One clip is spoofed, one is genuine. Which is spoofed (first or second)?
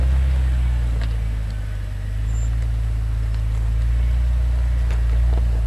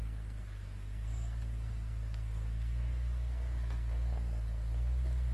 second